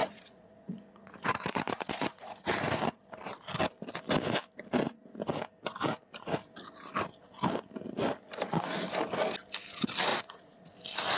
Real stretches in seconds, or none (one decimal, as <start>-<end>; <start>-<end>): 2.5-10.1; 10.7-11.2